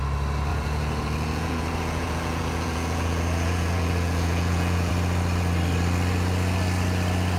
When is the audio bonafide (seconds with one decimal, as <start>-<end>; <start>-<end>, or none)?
0.0-0.5; 4.9-7.4